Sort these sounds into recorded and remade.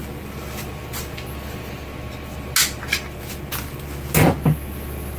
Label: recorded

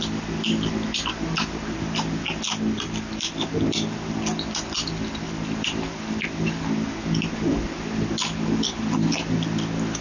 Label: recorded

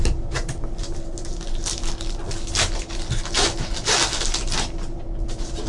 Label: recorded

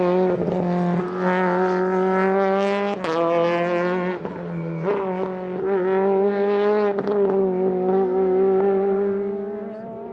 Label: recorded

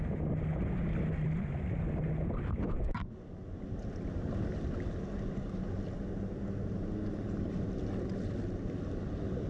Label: recorded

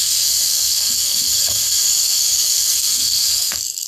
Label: remade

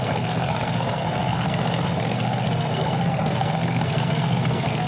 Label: remade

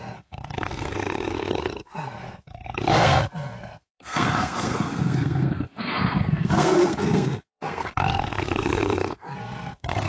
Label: remade